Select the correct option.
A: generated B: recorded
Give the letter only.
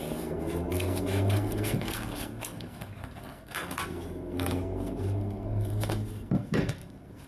A